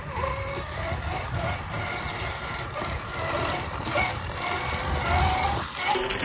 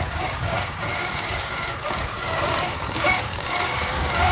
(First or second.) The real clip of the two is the first